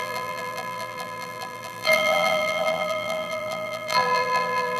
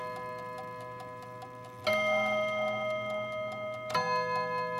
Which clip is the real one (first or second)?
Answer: second